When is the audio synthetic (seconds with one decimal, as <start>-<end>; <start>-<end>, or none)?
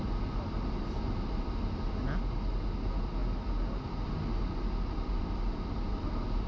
none